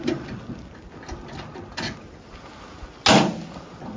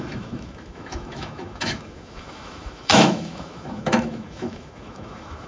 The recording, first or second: first